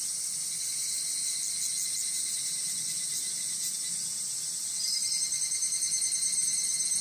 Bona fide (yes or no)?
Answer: yes